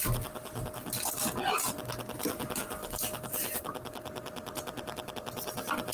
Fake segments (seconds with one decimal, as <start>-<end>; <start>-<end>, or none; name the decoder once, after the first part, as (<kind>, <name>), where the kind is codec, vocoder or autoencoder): 2.8-5.1 (vocoder, BigVGAN v2)